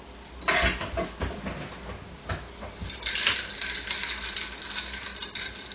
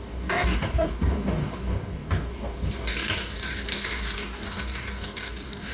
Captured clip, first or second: first